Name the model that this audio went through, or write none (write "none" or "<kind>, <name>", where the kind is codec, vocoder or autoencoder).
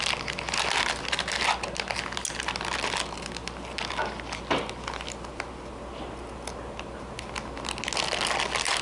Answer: none